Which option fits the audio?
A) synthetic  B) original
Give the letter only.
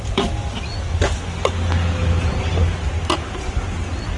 B